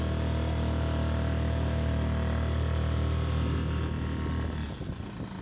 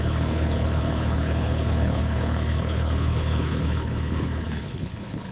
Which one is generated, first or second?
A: second